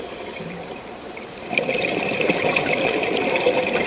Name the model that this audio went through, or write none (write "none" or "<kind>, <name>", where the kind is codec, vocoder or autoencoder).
vocoder, BigVGAN v2